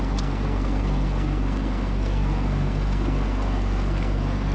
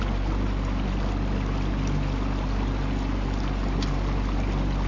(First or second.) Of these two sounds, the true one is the second